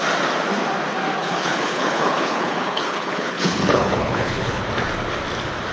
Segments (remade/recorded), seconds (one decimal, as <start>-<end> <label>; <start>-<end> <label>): 0.0-1.2 recorded; 1.2-4.6 remade; 4.6-5.7 recorded